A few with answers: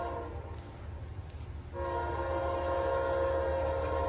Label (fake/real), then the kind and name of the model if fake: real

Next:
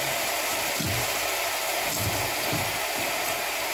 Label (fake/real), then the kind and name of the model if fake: real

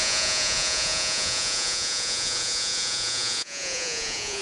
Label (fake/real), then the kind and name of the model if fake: fake, vocoder, Vocos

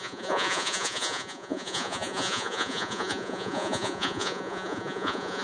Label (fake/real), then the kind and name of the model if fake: fake, vocoder, Vocos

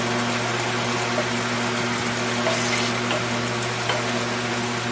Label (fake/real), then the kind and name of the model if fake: real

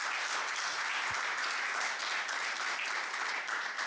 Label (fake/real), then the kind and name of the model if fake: real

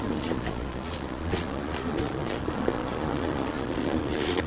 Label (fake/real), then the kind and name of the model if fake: fake, vocoder, Vocos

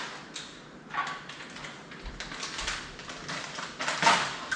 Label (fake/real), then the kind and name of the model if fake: real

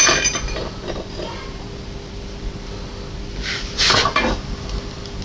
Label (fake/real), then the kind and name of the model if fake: real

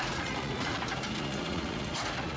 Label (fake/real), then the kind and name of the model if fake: fake, vocoder, Vocos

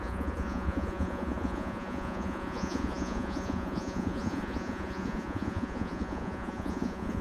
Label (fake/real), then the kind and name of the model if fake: fake, vocoder, Vocos